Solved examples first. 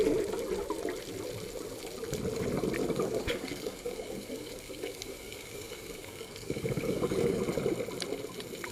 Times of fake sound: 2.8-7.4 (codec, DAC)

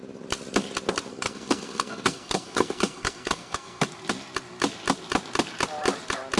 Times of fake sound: 1.1-3.8 (codec, SNAC)

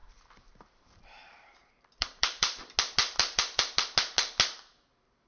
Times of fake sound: 0.0-2.6 (vocoder, BigVGAN v2); 3.0-3.6

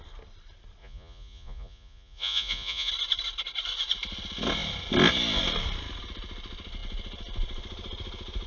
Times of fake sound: 0.8-2.9 (vocoder, Vocos)

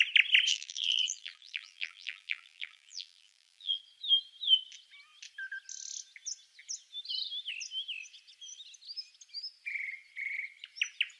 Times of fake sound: 0.5-3.8 (vocoder, BigVGAN v2)

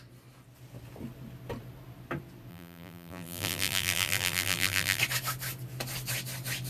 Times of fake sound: 2.5-5.0 (vocoder, BigVGAN v2)